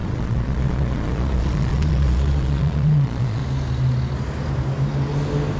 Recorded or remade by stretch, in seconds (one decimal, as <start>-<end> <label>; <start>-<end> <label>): 0.0-3.4 remade; 3.4-5.6 recorded